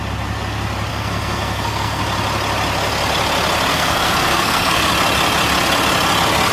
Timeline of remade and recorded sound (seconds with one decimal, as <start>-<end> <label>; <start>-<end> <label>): 0.0-0.9 recorded; 0.9-2.0 remade; 2.0-3.7 recorded; 3.7-4.9 remade; 4.9-6.5 recorded

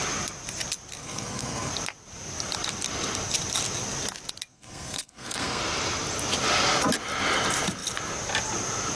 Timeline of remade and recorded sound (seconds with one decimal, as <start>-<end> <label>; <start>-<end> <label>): 0.0-1.0 recorded; 1.0-1.7 remade; 1.7-4.5 recorded; 4.5-5.6 remade; 5.6-9.0 recorded

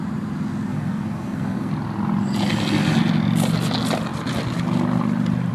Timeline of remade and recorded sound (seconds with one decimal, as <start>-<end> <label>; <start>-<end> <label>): 0.0-0.7 recorded; 0.7-1.7 remade; 1.7-5.5 recorded

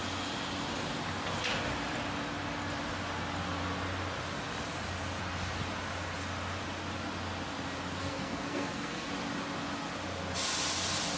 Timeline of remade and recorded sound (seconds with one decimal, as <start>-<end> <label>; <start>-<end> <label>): 0.0-8.0 recorded; 8.0-9.1 remade; 9.1-11.2 recorded

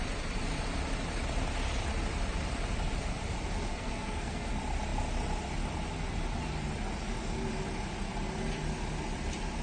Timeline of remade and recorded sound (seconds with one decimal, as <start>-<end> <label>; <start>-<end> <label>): 0.0-3.7 recorded; 3.7-4.5 remade; 4.5-9.6 recorded

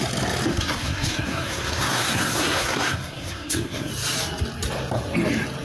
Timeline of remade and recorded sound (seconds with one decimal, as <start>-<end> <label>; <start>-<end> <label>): 0.0-0.5 recorded; 0.5-3.9 remade; 3.9-5.6 recorded